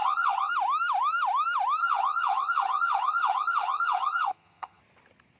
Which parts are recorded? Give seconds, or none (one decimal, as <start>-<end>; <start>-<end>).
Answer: 0.5-1.8; 4.8-5.4